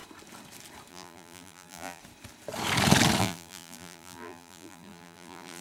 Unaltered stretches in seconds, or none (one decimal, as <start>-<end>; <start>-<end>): 0.0-0.9; 2.0-3.2